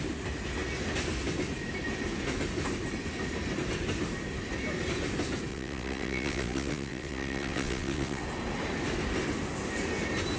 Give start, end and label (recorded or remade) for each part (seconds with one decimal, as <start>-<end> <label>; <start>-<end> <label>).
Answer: 0.0-5.5 recorded; 5.5-8.2 remade; 8.2-10.4 recorded